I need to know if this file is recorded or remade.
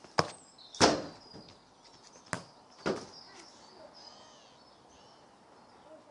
recorded